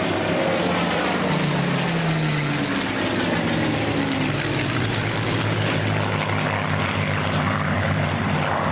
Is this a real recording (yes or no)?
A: yes